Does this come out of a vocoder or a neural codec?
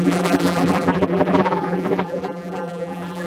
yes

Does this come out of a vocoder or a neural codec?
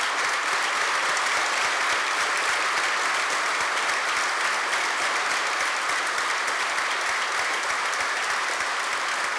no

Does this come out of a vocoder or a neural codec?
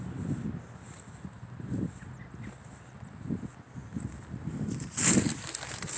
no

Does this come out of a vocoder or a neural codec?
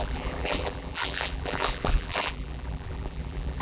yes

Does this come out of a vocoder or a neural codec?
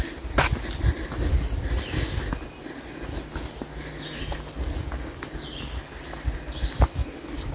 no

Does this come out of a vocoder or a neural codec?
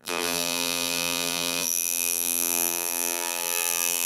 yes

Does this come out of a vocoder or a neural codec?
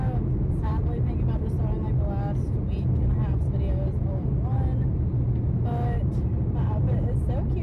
no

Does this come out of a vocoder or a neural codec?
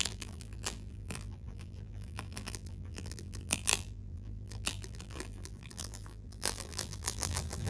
yes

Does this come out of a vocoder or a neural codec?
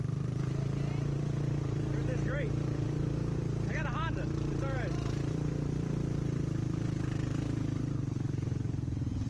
yes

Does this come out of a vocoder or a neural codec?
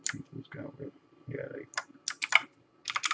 no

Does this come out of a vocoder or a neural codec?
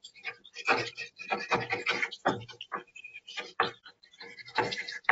yes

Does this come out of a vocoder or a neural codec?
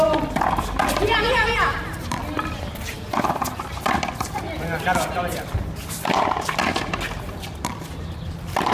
yes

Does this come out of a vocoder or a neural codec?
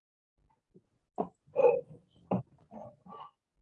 no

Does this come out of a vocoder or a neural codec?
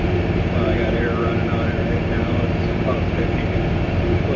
yes